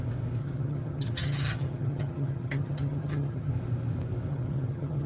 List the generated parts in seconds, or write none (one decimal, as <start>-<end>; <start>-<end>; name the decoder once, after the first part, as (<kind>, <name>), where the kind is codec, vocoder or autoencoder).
0.4-3.5 (vocoder, HiFi-GAN); 4.3-5.1